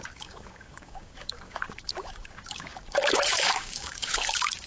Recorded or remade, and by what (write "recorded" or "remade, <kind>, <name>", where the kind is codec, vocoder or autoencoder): remade, codec, DAC